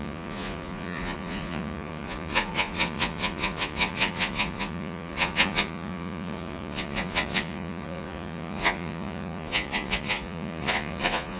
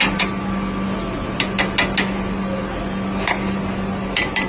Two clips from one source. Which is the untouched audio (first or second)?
second